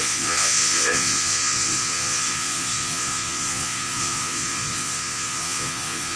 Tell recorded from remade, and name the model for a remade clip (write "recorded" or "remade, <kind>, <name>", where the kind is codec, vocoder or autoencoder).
remade, vocoder, Vocos